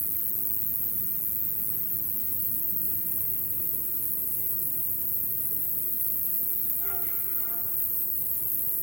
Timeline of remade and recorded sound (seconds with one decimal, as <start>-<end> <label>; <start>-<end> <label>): 0.0-2.2 recorded; 2.2-8.8 remade